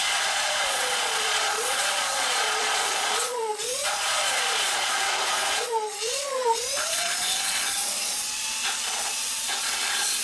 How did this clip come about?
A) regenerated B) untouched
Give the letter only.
A